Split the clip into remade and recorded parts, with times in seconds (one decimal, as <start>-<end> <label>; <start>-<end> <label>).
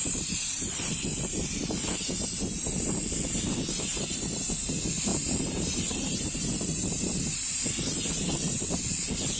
0.0-0.7 remade; 0.7-5.1 recorded; 5.1-7.7 remade; 7.7-9.4 recorded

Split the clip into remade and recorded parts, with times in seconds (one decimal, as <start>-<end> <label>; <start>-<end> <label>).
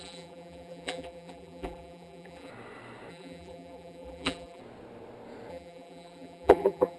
0.0-2.5 remade; 2.5-3.1 recorded; 3.1-4.6 remade; 4.6-5.5 recorded; 5.5-7.0 remade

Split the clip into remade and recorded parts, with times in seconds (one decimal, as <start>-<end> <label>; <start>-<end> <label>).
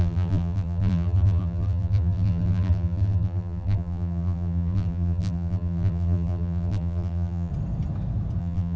0.0-7.5 remade; 7.5-8.4 recorded; 8.4-8.8 remade